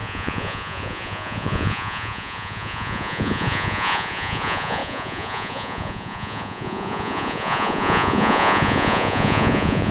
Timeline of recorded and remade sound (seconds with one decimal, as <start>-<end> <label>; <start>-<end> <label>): 0.0-9.9 remade